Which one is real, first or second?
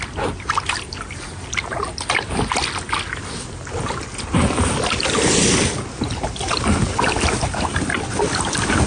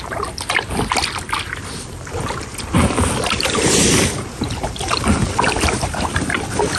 first